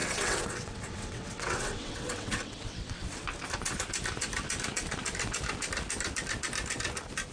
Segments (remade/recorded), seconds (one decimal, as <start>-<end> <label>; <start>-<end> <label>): 0.0-3.2 remade; 3.2-7.3 recorded